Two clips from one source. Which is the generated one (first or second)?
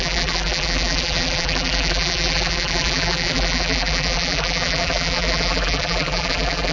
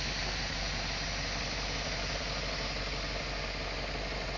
first